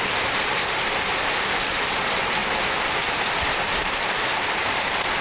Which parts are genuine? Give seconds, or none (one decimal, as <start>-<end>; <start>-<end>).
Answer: 2.4-3.3